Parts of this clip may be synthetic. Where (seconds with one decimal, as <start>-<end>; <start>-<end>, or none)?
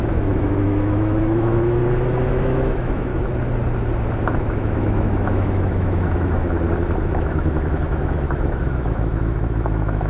0.0-1.8; 2.3-3.1; 4.4-6.4; 7.0-10.1